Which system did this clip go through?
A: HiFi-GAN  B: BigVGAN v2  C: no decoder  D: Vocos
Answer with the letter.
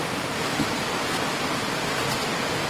C